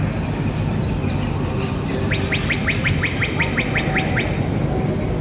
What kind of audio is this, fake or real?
real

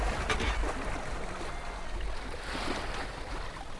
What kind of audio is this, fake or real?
real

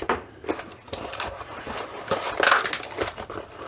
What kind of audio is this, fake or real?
real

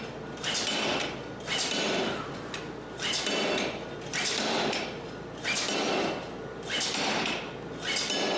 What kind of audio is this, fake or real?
real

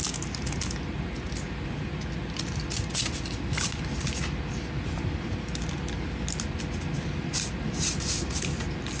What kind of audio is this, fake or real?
real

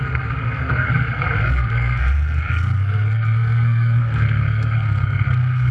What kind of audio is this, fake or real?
fake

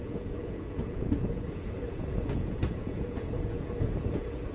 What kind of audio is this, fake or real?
fake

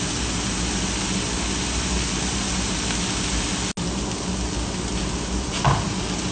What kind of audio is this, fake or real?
real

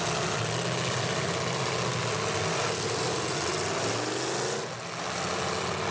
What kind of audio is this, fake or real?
real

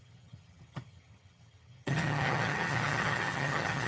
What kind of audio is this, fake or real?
fake